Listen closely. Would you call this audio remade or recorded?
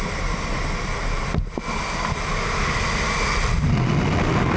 recorded